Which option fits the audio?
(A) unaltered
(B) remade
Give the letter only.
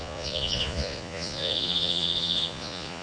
B